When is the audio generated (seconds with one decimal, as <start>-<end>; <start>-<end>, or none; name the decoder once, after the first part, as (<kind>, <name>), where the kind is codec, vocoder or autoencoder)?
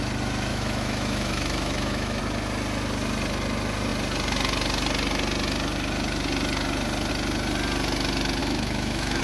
0.5-2.2 (autoencoder, DAC-VAE); 8.4-9.2